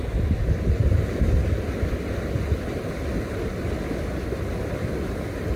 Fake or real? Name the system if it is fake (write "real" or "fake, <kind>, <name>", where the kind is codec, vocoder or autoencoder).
real